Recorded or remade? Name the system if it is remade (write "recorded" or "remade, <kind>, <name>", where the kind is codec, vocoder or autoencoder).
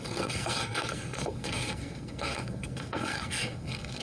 remade, codec, SNAC